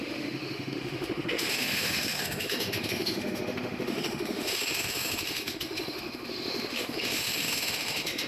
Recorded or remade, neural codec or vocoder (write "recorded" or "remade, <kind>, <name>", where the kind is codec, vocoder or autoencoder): remade, autoencoder, DAC-VAE